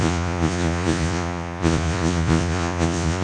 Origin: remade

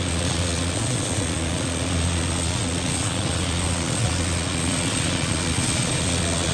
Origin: remade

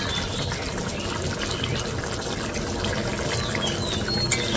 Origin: recorded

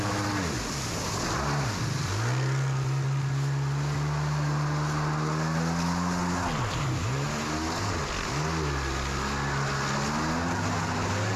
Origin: recorded